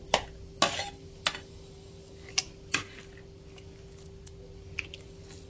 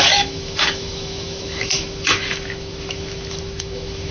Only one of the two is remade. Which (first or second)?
second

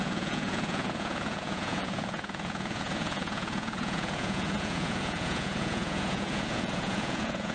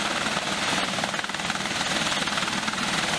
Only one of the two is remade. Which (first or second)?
first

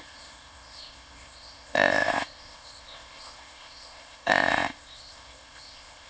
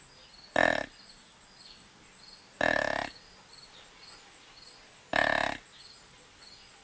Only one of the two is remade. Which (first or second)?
first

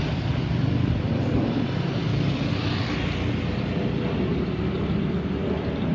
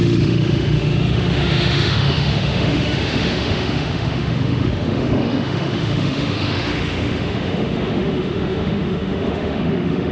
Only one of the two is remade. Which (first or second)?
second